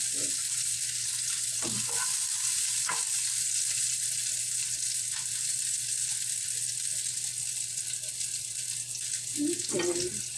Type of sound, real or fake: real